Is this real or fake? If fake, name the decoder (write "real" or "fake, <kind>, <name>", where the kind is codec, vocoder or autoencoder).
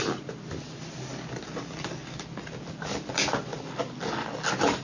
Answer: real